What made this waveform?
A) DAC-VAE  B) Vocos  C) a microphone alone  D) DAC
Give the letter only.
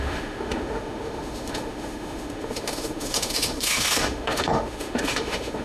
A